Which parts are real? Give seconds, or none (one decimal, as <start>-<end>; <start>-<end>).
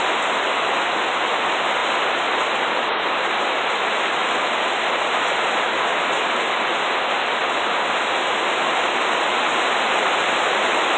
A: 0.0-11.0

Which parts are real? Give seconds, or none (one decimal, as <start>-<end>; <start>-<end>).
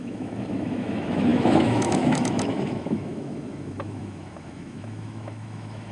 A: none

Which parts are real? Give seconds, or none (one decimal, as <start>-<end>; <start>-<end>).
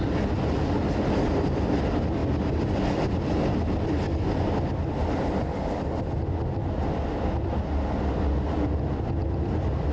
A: 0.0-9.9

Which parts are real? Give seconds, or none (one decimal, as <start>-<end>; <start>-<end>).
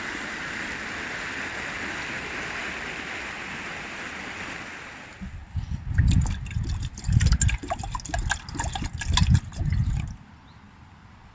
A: 0.0-11.3